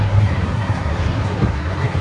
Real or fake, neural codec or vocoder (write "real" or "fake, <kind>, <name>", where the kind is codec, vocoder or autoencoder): fake, codec, SNAC